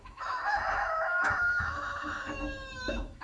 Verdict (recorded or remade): remade